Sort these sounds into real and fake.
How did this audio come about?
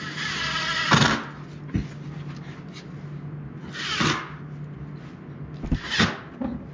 real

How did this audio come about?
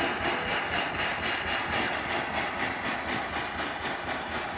real